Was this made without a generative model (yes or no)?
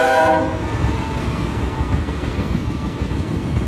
no